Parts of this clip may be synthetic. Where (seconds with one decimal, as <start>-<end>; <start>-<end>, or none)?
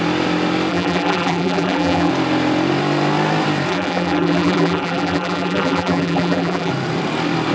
0.7-2.1; 3.7-6.7